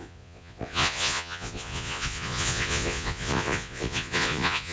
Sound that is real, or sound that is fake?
fake